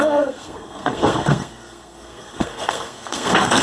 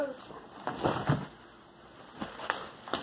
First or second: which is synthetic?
first